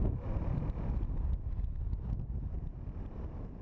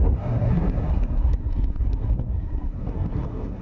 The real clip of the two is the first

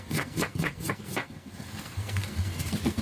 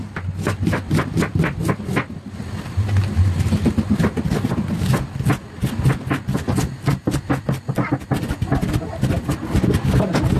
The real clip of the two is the second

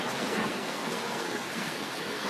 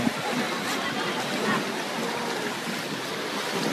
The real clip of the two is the second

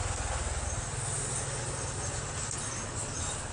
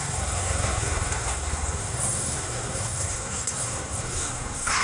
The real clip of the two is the first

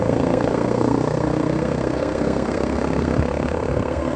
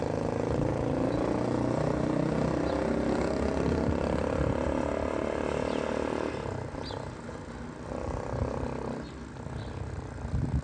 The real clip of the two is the second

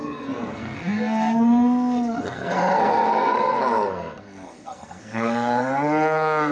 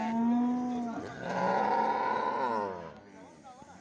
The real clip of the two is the second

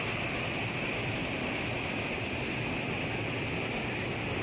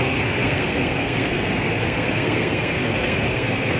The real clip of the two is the first